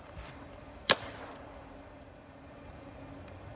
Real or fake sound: fake